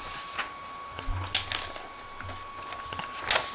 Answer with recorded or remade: recorded